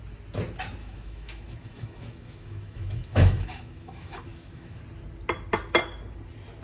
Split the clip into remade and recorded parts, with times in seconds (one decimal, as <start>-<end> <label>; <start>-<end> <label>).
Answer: 0.0-0.8 recorded; 0.8-4.8 remade; 4.8-6.6 recorded

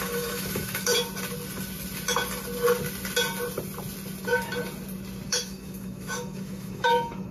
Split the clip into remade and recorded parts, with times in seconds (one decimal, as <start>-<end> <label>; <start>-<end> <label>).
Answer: 0.0-0.9 remade; 0.9-5.3 recorded; 5.3-7.3 remade

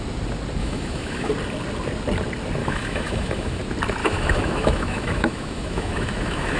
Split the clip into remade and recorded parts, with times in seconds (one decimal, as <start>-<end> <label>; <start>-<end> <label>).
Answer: 0.0-0.6 recorded; 0.6-1.3 remade; 1.3-2.6 recorded; 2.6-3.6 remade; 3.6-4.0 recorded; 4.0-6.6 remade

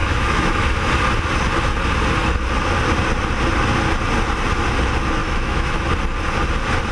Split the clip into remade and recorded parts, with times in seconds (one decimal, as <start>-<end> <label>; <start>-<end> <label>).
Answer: 0.0-0.9 remade; 0.9-5.2 recorded; 5.2-5.8 remade; 5.8-6.9 recorded

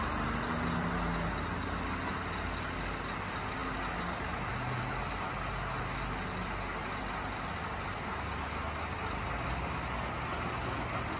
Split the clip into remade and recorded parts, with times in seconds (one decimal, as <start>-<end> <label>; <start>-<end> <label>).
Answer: 0.0-11.2 recorded